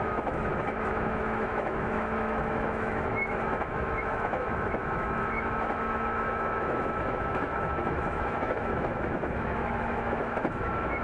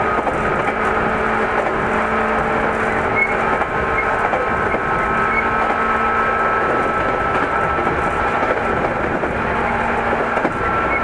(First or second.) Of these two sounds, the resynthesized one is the first